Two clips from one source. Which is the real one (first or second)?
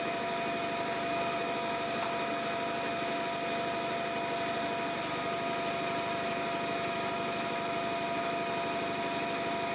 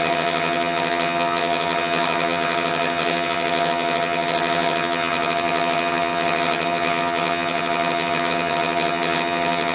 first